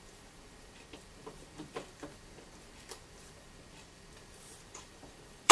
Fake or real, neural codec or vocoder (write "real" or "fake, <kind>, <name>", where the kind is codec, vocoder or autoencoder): fake, vocoder, BigVGAN v2